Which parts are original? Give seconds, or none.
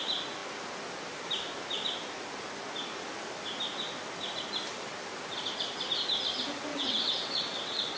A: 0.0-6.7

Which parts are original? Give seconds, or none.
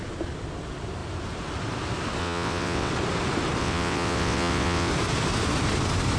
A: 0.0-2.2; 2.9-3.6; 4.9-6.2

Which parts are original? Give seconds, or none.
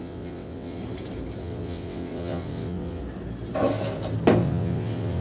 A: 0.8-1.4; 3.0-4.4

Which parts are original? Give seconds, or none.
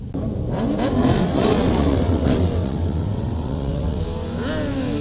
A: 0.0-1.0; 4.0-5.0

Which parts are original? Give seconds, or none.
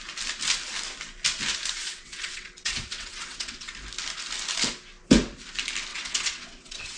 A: 0.0-1.8; 3.7-5.9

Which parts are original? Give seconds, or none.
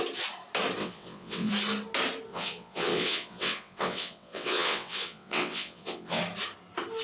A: 0.0-0.8; 1.5-2.3; 6.2-7.0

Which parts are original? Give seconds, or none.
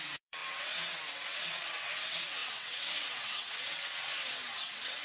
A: 4.1-4.6